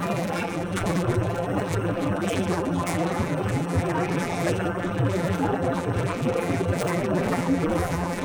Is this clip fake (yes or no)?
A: yes